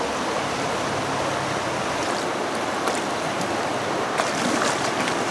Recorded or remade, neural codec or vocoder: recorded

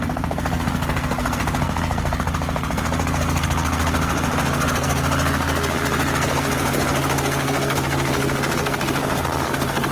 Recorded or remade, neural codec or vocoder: remade, codec, SNAC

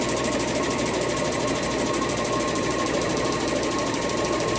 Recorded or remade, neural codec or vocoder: remade, vocoder, BigVGAN v2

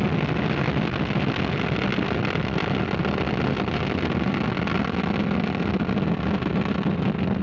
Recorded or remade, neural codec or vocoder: recorded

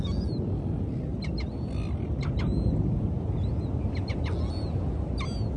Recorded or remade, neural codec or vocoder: recorded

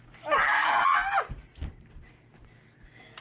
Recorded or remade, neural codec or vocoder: recorded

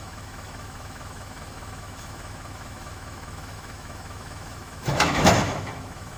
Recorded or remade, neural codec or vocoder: remade, autoencoder, DAC-VAE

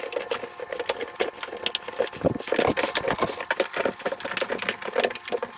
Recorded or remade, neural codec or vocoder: recorded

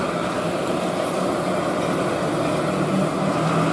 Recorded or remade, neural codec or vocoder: recorded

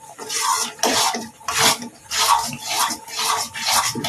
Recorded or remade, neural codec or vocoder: recorded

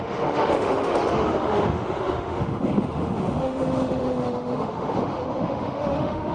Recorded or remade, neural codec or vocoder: remade, autoencoder, DAC-VAE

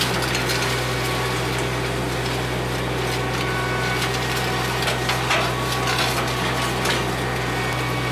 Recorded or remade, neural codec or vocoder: recorded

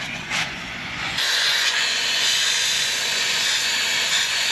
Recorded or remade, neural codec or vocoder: remade, vocoder, Vocos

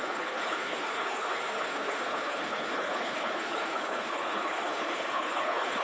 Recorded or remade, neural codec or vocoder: remade, codec, HILCodec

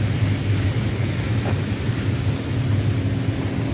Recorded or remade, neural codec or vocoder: recorded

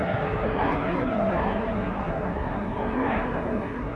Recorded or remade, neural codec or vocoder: remade, codec, SNAC